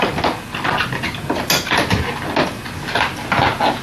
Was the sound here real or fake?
real